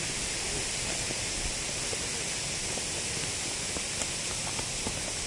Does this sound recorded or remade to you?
recorded